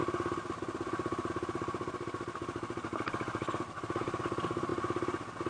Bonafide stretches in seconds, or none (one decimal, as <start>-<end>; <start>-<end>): 1.3-2.9; 4.2-4.7